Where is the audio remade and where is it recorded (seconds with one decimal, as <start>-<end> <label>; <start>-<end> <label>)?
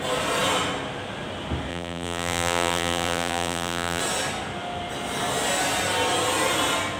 0.0-1.7 recorded; 1.7-4.0 remade; 4.0-7.0 recorded